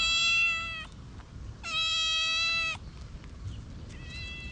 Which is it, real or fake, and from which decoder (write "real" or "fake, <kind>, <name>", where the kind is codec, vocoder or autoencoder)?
real